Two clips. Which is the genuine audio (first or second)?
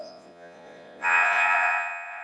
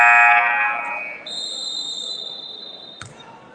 second